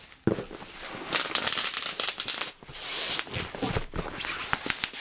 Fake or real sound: real